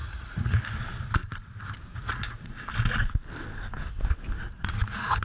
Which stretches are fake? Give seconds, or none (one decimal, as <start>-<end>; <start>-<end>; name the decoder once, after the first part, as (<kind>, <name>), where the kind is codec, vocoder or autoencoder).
0.0-0.6 (vocoder, Vocos); 1.9-2.5